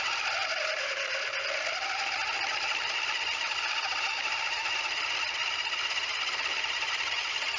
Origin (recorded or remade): recorded